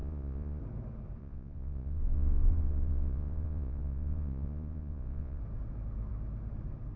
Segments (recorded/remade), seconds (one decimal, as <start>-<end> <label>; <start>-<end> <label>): 0.0-0.6 remade; 0.6-1.2 recorded; 1.2-5.4 remade; 5.4-7.0 recorded

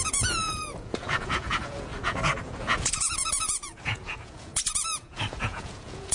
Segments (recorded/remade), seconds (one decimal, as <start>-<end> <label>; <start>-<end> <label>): 0.0-6.1 remade